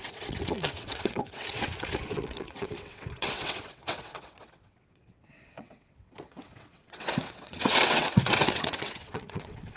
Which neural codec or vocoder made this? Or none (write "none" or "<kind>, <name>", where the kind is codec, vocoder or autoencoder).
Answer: vocoder, WaveNeXt